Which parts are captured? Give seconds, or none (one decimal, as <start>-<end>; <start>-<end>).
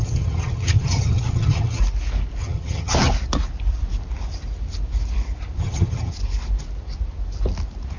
1.8-2.4; 3.1-5.6; 6.1-8.0